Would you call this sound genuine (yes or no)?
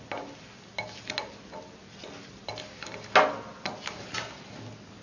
yes